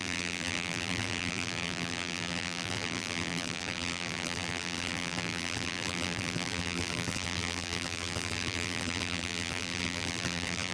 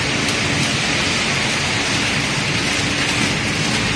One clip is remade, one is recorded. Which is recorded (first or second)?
second